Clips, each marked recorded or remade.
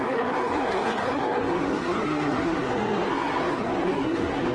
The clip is remade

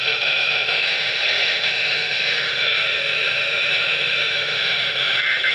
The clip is remade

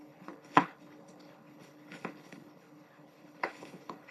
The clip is remade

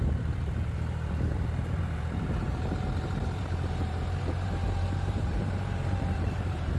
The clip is remade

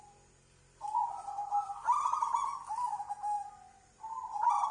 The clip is recorded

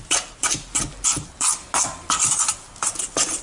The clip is recorded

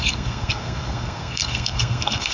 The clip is remade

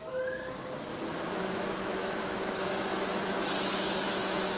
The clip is remade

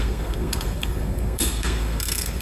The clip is remade